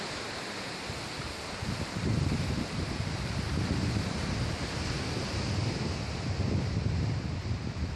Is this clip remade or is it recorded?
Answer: recorded